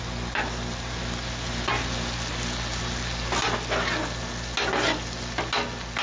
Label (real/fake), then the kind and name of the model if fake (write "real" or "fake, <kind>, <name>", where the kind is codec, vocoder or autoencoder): real